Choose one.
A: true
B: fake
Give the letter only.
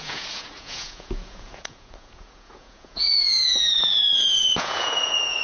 B